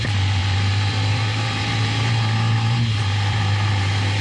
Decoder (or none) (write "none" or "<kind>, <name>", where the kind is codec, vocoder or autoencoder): vocoder, BigVGAN v2